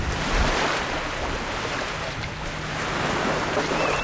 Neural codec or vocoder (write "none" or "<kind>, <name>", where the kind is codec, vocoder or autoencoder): vocoder, BigVGAN v2